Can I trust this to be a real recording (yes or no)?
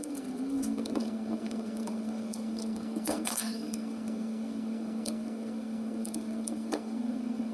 no